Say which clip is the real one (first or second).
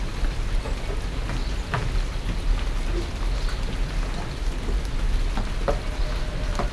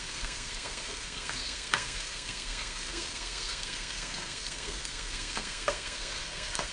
first